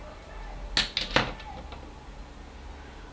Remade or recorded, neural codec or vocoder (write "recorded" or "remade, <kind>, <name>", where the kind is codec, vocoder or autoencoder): recorded